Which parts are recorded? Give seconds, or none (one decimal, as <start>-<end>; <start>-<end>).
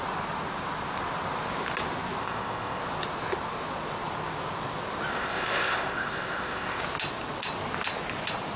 0.0-2.2; 2.8-5.1; 6.8-8.6